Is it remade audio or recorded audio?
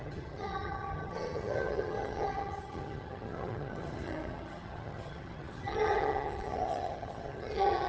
remade